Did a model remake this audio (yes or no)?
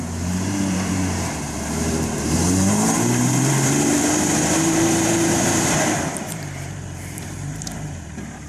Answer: yes